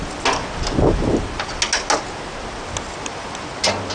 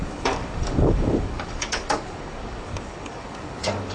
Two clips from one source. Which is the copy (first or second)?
second